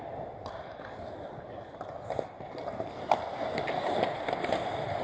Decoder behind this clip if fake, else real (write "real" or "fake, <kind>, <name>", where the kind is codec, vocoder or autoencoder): real